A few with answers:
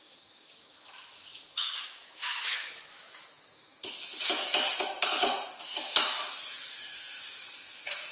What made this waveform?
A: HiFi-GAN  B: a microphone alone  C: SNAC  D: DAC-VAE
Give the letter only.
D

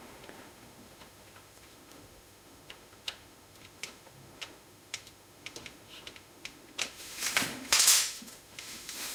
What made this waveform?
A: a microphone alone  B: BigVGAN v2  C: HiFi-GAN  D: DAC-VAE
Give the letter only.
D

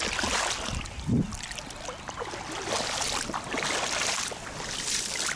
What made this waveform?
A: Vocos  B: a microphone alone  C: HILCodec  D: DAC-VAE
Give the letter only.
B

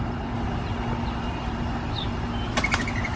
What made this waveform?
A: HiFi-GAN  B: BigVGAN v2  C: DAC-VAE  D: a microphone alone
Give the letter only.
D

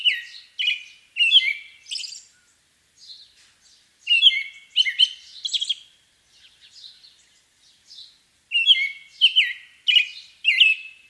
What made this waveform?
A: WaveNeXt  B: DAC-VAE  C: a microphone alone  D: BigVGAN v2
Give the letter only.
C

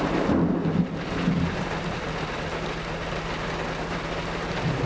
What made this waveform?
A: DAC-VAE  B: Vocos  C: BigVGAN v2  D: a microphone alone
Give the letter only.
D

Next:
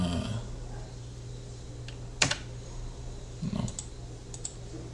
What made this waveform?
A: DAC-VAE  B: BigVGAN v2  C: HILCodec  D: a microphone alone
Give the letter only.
D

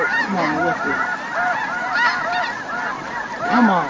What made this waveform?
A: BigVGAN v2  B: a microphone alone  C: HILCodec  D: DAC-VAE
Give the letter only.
B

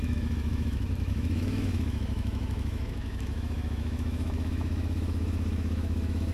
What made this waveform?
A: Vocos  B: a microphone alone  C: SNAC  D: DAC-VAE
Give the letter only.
D